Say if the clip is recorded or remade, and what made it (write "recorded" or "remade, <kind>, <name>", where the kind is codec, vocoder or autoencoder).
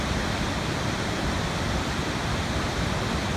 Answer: remade, vocoder, BigVGAN v2